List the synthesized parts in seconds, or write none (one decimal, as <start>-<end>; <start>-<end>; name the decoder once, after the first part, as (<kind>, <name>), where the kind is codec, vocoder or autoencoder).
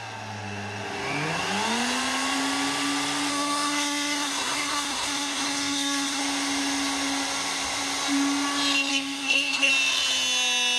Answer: 3.3-6.2 (codec, SNAC); 8.9-9.7